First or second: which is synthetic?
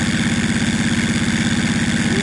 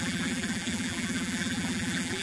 second